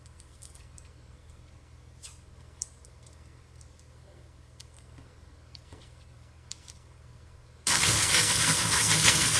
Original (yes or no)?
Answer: no